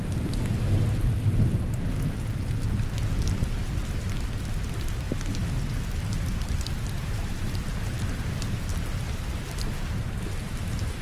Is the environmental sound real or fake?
real